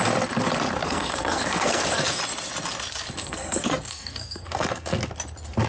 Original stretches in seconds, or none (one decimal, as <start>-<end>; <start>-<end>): 0.0-0.8; 2.2-3.2; 5.0-5.7

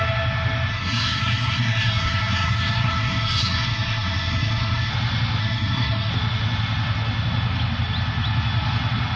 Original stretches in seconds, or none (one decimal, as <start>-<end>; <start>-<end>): 0.0-0.7; 4.9-5.4; 6.1-9.2

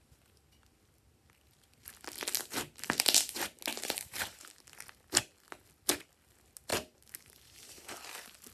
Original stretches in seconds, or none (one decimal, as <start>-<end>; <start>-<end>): 0.0-3.7; 4.6-6.7

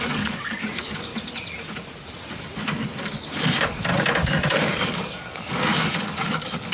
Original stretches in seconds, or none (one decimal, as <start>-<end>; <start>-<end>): 1.1-3.1; 3.9-4.5

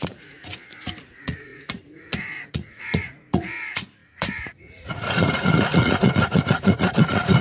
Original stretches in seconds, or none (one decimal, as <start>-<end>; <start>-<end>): 0.5-1.1